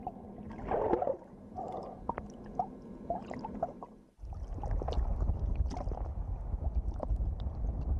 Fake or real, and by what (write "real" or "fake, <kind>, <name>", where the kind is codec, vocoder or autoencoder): real